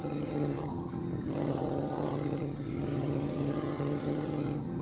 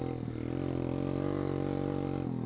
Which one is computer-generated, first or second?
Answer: first